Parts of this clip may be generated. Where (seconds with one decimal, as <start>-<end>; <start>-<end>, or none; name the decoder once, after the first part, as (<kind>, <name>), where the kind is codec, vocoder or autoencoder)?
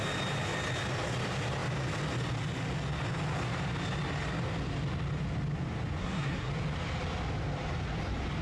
6.0-6.5 (codec, SNAC)